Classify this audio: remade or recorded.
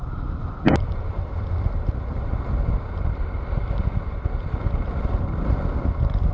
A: remade